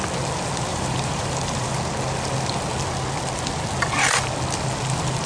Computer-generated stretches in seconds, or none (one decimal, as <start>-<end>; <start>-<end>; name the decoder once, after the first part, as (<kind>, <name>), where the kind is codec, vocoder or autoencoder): 0.7-1.7 (vocoder, BigVGAN v2)